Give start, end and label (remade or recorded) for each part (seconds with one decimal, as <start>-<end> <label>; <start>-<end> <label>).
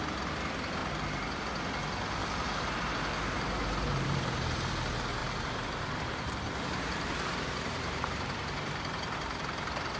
0.0-0.8 recorded; 0.8-1.4 remade; 1.4-2.2 recorded; 2.2-4.7 remade; 4.7-5.2 recorded; 5.2-10.0 remade